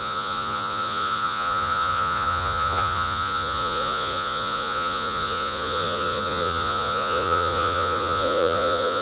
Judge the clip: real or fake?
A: fake